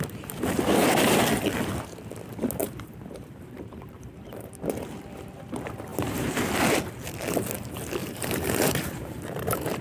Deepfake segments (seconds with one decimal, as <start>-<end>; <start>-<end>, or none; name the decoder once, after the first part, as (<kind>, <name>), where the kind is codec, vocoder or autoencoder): 2.6-4.5 (vocoder, BigVGAN v2); 5.9-6.5; 8.0-9.8